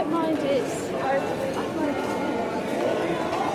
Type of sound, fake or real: real